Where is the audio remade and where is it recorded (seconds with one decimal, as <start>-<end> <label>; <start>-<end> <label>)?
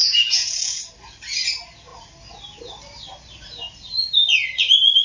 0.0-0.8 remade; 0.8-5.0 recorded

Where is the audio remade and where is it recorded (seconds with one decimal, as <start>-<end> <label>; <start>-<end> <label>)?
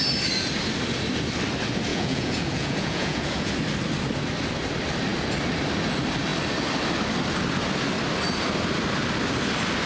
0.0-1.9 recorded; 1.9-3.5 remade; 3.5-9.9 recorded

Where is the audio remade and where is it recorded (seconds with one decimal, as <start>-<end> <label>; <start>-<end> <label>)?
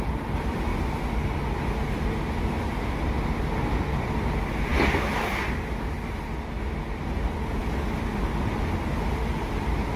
0.0-10.0 recorded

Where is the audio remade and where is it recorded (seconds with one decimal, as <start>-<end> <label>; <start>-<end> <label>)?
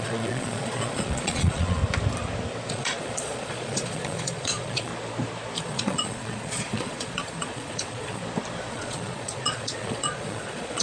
0.0-1.8 remade; 1.8-2.7 recorded; 2.7-4.9 remade; 4.9-5.6 recorded; 5.6-8.2 remade; 8.2-8.7 recorded; 8.7-10.8 remade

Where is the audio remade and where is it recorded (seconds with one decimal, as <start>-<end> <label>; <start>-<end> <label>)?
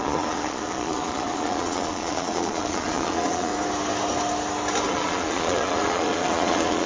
0.0-3.5 remade; 3.5-4.9 recorded; 4.9-6.9 remade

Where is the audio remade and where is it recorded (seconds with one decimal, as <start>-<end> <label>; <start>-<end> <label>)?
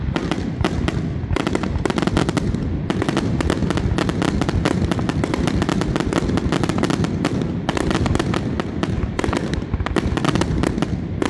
0.0-11.3 recorded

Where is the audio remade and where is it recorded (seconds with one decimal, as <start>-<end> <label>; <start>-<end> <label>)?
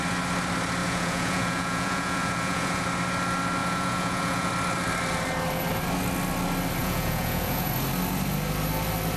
0.0-0.8 recorded; 0.8-2.8 remade; 2.8-3.6 recorded; 3.6-4.5 remade; 4.5-6.8 recorded; 6.8-7.7 remade; 7.7-9.2 recorded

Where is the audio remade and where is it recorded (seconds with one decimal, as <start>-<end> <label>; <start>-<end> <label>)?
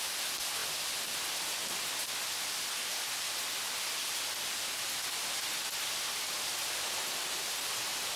0.0-8.2 recorded